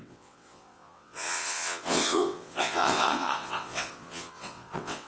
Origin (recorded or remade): remade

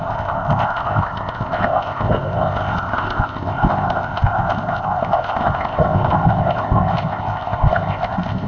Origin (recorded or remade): remade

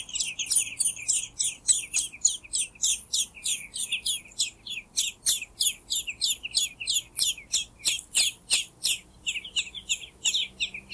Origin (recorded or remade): recorded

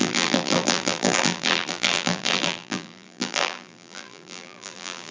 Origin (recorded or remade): remade